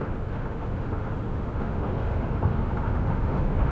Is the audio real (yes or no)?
no